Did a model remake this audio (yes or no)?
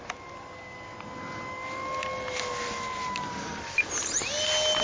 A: no